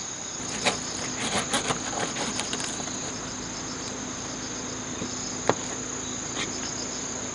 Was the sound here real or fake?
real